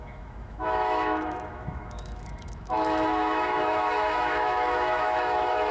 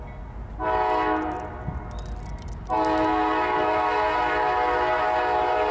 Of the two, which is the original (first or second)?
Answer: second